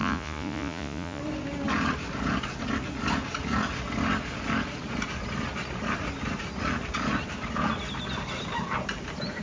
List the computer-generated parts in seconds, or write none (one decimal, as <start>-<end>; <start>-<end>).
0.0-1.2